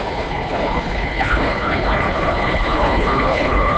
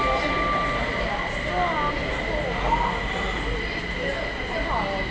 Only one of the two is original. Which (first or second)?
second